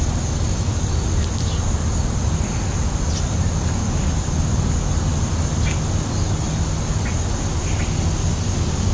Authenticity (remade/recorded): recorded